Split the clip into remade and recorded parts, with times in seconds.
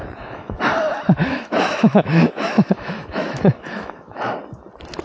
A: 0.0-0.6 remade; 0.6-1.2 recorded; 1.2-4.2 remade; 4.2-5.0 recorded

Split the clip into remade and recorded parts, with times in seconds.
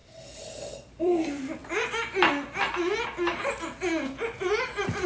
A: 0.0-1.6 remade; 1.6-5.1 recorded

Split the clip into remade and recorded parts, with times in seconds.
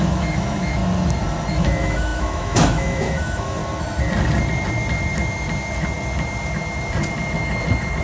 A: 0.0-0.8 remade; 0.8-1.5 recorded; 1.5-3.6 remade; 3.6-8.0 recorded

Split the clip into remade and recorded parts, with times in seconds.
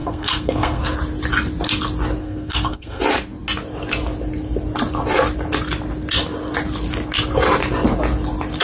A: 0.0-0.8 remade; 0.8-2.2 recorded; 2.2-3.0 remade; 3.0-8.6 recorded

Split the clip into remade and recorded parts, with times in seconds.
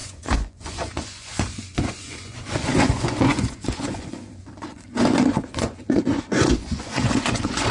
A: 0.0-7.7 remade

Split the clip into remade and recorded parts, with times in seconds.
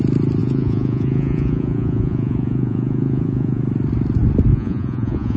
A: 0.0-0.4 recorded; 0.4-3.6 remade; 3.6-4.5 recorded; 4.5-5.4 remade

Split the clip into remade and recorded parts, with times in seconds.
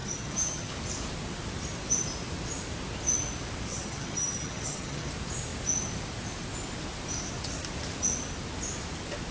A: 0.0-0.7 remade; 0.7-3.7 recorded; 3.7-5.1 remade; 5.1-9.3 recorded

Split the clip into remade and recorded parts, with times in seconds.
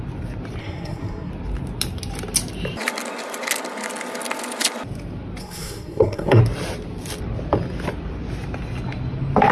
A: 0.0-0.6 recorded; 0.6-1.3 remade; 1.3-5.4 recorded; 5.4-6.4 remade; 6.4-9.5 recorded